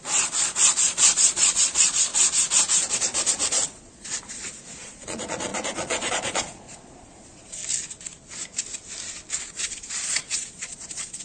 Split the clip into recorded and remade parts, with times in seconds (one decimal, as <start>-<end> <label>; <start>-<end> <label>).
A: 0.0-2.1 remade; 2.1-2.9 recorded; 2.9-7.6 remade; 7.6-9.4 recorded; 9.4-11.2 remade